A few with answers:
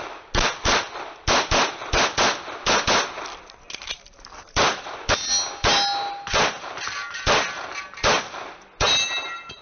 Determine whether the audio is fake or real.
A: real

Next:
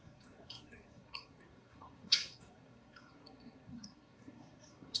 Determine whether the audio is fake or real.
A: fake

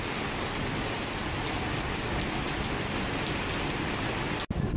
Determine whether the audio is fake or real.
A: real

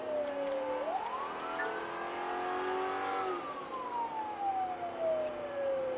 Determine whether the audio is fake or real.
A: real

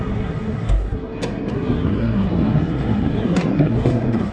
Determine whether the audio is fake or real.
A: fake